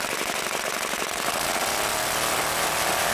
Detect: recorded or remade recorded